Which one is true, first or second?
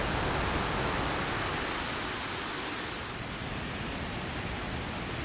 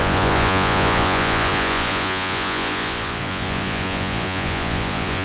first